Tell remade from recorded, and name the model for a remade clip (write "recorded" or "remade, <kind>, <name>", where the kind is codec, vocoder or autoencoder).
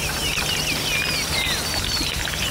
recorded